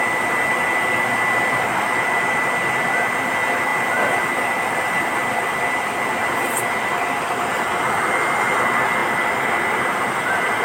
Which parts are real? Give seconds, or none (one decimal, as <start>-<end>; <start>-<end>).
0.0-10.6